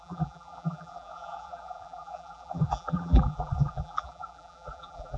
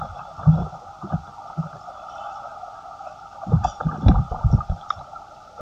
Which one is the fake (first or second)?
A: first